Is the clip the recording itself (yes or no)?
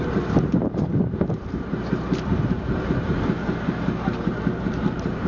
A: no